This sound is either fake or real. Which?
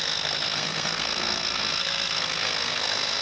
fake